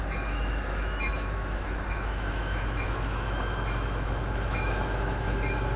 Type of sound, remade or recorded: remade